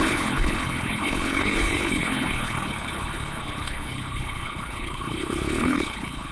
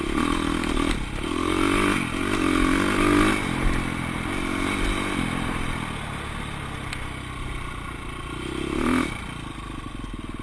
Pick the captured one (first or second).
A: second